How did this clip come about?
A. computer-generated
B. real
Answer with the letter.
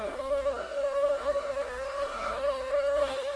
A